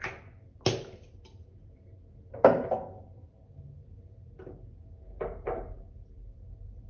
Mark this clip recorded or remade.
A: recorded